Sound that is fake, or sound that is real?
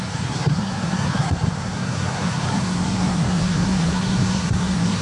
fake